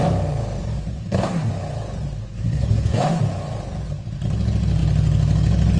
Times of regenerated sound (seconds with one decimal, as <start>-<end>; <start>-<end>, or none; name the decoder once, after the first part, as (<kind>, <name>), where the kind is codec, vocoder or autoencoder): 0.9-1.5 (codec, SNAC); 2.2-3.2